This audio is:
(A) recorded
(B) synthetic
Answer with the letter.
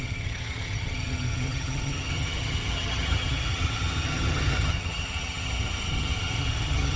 B